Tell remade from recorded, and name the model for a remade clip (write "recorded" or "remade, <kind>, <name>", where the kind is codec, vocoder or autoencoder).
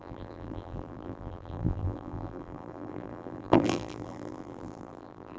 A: remade, vocoder, BigVGAN v2